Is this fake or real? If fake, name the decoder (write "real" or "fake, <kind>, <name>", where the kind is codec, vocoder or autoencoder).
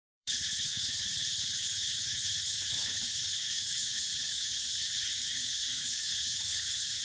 fake, codec, HILCodec